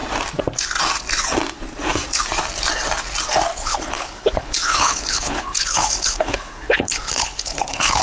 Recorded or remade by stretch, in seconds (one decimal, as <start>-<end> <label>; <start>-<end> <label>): 0.0-3.5 recorded; 3.5-8.0 remade